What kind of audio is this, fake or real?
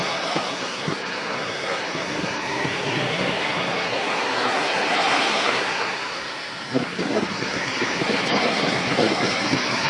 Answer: fake